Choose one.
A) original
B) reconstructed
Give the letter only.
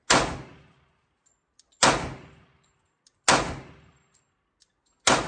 A